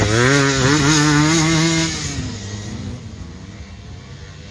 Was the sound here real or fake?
real